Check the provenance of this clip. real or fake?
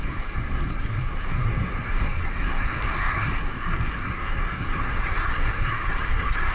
fake